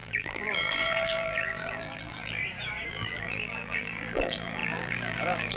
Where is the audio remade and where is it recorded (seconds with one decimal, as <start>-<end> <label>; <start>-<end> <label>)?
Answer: 0.0-2.4 remade; 2.4-2.9 recorded; 2.9-5.6 remade